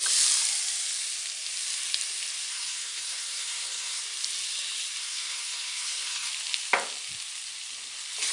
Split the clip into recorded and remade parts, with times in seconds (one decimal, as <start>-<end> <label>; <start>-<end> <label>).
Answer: 0.0-2.5 recorded; 2.5-4.0 remade; 4.0-5.0 recorded; 5.0-6.3 remade; 6.3-8.3 recorded